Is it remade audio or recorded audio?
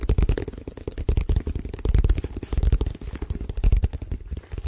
recorded